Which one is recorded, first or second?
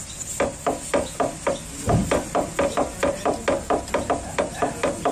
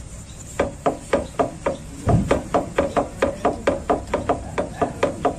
first